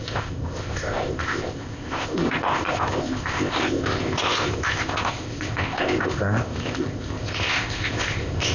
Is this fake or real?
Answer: fake